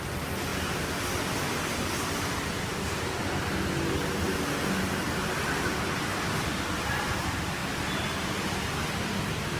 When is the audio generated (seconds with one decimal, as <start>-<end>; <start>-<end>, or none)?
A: none